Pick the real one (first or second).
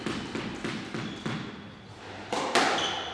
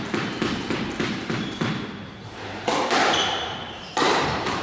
first